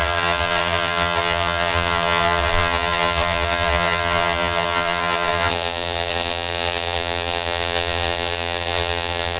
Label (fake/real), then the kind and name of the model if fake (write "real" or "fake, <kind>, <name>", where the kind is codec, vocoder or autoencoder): fake, vocoder, BigVGAN v2